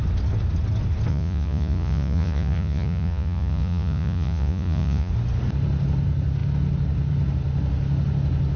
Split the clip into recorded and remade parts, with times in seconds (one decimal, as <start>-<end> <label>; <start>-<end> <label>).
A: 0.0-1.1 recorded; 1.1-5.1 remade; 5.1-8.6 recorded